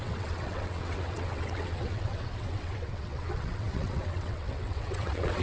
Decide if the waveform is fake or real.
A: fake